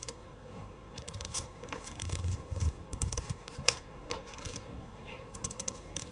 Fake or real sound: fake